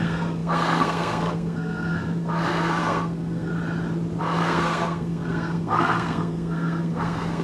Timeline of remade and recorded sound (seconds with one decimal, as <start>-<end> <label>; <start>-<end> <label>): 0.0-3.5 remade; 3.5-4.2 recorded; 4.2-7.4 remade